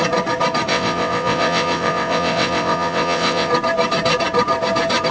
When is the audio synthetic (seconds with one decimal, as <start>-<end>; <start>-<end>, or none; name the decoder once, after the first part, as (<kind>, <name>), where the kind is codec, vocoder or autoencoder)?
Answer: 0.7-3.5 (vocoder, WaveNeXt)